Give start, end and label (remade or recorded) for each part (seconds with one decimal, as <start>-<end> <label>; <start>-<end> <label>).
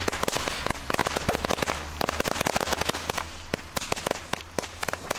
0.0-5.2 recorded